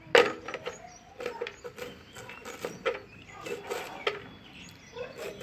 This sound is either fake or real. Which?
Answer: real